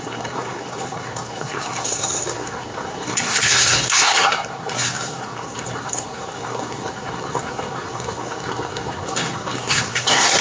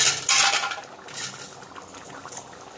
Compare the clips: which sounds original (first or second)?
second